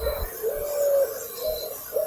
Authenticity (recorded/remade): recorded